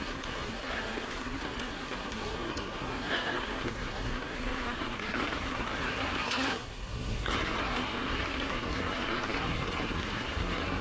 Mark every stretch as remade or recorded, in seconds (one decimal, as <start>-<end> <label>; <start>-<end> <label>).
0.0-10.8 remade